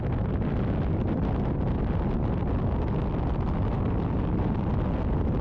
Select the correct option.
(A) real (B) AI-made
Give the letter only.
A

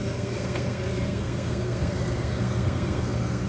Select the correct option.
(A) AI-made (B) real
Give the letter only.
A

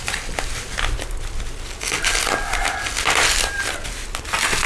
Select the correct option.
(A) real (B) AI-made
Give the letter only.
A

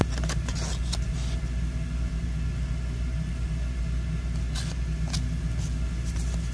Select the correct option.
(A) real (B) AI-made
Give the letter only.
A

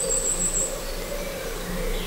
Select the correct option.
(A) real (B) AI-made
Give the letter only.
A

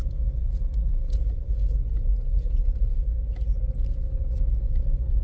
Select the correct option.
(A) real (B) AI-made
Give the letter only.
A